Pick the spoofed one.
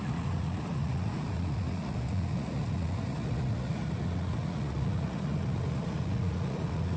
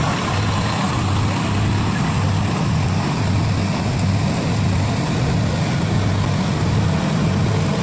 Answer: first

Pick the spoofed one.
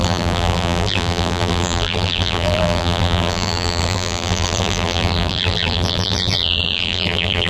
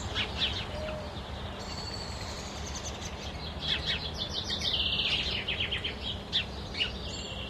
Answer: first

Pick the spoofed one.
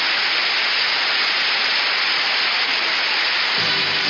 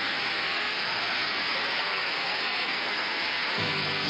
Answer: second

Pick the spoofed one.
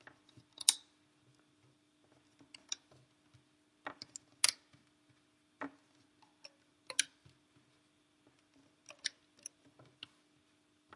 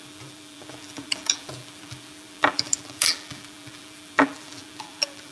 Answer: second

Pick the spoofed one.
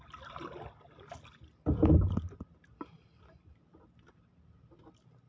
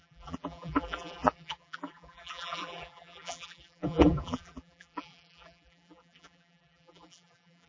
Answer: second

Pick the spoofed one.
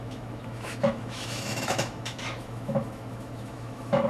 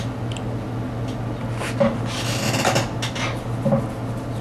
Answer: first